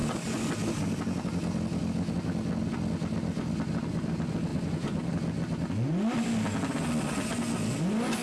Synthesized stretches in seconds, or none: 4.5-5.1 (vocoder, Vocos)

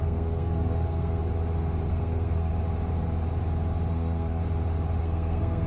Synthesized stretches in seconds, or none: 0.0-1.2 (codec, SNAC); 1.9-2.5; 3.9-4.4; 5.0-5.7

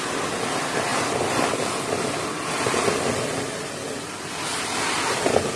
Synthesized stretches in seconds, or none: none

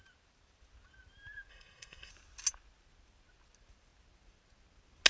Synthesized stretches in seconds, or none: 1.5-2.1 (codec, SNAC)

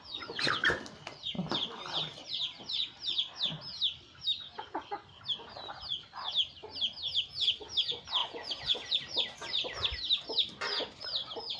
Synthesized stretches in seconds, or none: 8.2-9.0 (vocoder, Vocos)

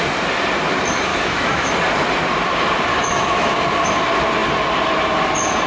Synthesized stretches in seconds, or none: 1.1-1.7 (autoencoder, DAC-VAE); 2.9-3.6

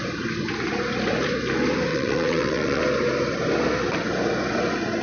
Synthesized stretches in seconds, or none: 1.9-2.8 (vocoder, WaveNeXt)